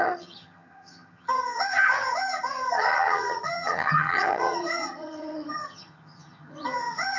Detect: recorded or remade remade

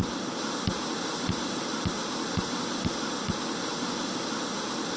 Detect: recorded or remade recorded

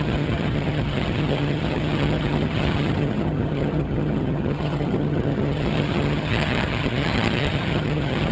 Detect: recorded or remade remade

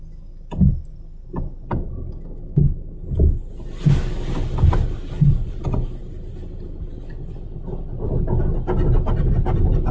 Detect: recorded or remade recorded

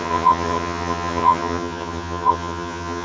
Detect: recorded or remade remade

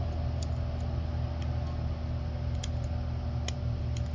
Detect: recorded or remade recorded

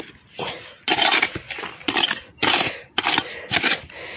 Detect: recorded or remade recorded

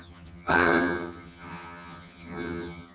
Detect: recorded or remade remade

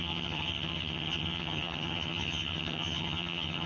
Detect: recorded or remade remade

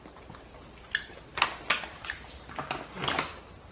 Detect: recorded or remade recorded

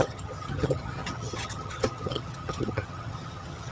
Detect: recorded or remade remade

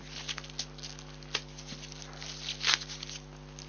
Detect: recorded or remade recorded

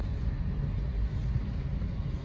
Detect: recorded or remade recorded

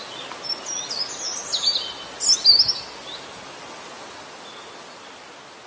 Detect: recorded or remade recorded